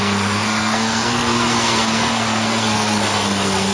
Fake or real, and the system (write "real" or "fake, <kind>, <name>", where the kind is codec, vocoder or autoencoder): fake, codec, SNAC